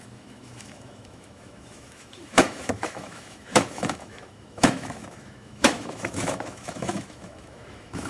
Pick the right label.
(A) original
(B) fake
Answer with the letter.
B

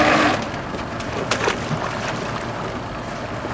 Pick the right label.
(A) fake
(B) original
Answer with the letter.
B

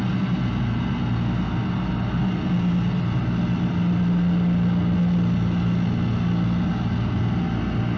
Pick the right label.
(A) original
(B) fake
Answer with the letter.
A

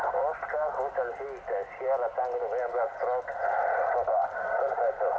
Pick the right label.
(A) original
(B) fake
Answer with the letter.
A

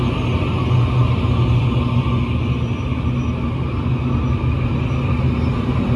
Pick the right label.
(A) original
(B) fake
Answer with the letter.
A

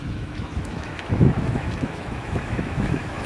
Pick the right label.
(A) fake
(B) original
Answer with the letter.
A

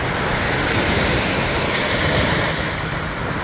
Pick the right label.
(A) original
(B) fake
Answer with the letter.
A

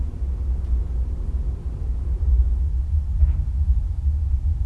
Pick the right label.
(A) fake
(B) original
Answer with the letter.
B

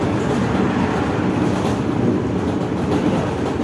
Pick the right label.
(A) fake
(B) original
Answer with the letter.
B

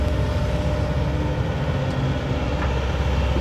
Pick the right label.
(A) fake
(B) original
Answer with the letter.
B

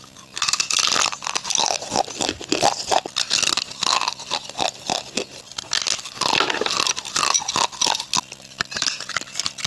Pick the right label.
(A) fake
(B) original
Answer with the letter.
B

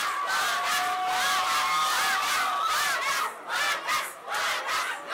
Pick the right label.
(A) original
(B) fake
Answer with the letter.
A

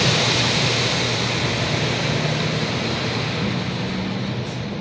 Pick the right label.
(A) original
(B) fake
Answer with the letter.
A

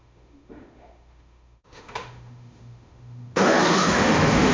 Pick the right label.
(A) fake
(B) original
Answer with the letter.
A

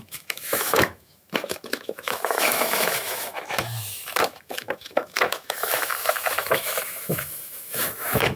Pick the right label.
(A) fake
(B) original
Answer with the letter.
A